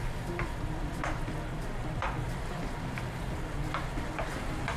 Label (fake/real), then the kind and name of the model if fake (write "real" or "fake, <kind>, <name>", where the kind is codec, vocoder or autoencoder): fake, vocoder, BigVGAN v2